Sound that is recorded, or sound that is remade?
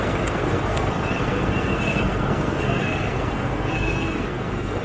remade